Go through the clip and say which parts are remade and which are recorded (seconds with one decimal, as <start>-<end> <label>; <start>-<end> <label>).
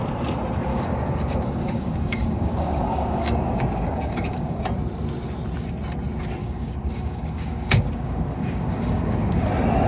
0.0-0.7 recorded; 0.7-4.6 remade; 4.6-6.4 recorded; 6.4-9.5 remade; 9.5-9.9 recorded